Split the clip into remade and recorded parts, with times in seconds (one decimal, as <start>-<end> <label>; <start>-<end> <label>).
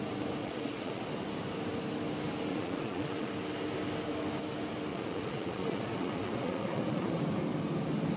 0.0-0.4 recorded; 0.4-1.0 remade; 1.0-2.5 recorded; 2.5-3.3 remade; 3.3-4.9 recorded; 4.9-7.2 remade; 7.2-8.2 recorded